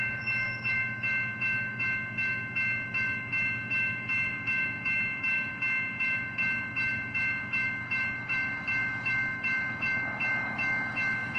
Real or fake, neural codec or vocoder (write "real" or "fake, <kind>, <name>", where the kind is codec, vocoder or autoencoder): fake, autoencoder, DAC-VAE